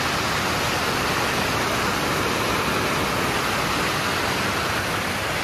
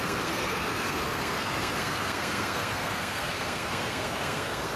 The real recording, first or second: first